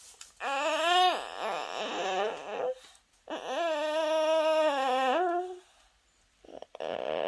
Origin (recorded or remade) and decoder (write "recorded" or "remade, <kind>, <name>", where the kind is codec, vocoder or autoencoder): recorded